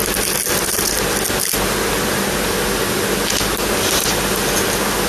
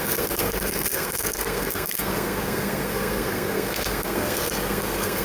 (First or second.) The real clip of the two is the first